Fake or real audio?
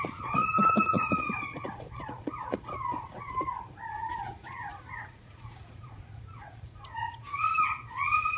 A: fake